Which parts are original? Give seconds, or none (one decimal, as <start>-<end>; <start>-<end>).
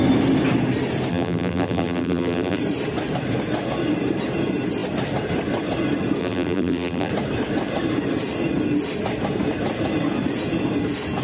0.0-1.1; 2.6-6.2; 7.1-11.2